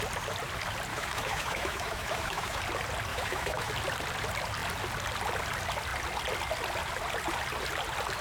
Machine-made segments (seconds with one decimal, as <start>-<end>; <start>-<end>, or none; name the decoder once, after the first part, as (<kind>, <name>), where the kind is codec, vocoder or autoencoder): 0.9-2.6 (autoencoder, DAC-VAE); 3.1-3.7